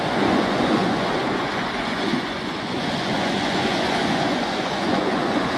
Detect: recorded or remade remade